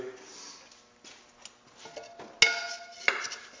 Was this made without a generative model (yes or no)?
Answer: yes